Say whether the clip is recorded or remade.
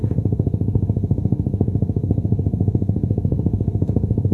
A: remade